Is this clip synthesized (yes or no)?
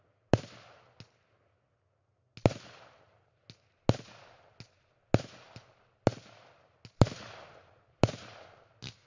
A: no